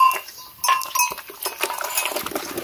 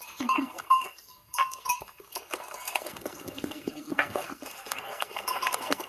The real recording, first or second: first